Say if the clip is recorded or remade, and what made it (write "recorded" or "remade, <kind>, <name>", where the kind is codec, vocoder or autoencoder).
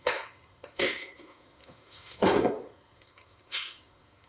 remade, codec, SNAC